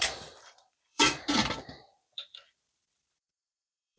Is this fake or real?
fake